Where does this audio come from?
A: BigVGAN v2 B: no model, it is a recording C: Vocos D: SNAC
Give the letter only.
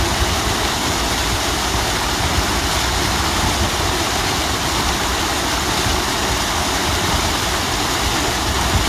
B